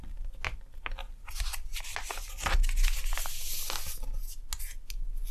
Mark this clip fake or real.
real